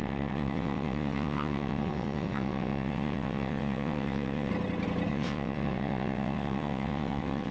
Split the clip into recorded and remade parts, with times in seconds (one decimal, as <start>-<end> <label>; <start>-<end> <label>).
0.0-4.5 remade; 4.5-5.1 recorded; 5.1-7.5 remade